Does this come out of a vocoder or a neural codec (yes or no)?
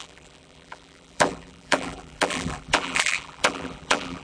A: yes